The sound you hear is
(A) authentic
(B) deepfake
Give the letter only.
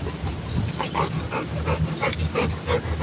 A